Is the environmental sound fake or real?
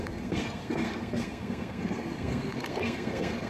fake